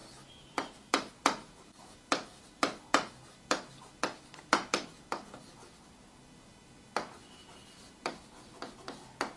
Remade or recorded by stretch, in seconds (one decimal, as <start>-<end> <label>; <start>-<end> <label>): 0.0-9.4 recorded